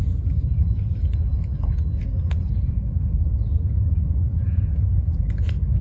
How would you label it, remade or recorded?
remade